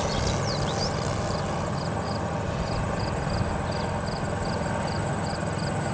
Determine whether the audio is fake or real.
real